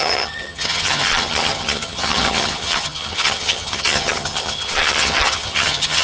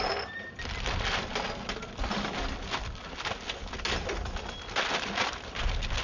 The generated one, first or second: first